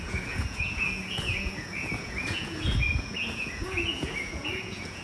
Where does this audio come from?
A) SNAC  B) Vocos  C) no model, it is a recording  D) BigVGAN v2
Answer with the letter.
B